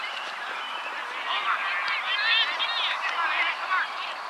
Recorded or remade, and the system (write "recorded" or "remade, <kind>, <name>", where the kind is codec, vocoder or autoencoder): remade, vocoder, BigVGAN v2